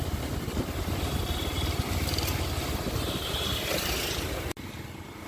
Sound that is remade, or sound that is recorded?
recorded